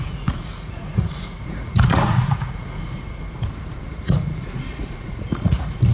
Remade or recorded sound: remade